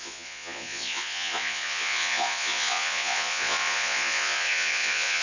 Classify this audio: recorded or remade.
remade